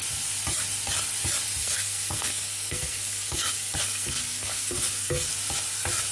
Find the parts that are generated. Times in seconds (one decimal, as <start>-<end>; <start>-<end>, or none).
1.6-5.3